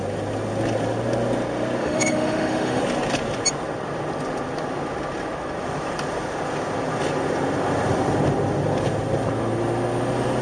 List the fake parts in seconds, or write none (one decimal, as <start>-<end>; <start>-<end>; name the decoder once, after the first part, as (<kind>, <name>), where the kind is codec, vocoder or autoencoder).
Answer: 1.8-2.8 (autoencoder, DAC-VAE)